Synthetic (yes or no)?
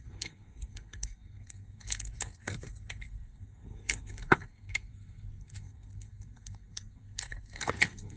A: yes